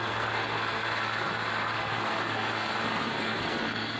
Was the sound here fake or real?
fake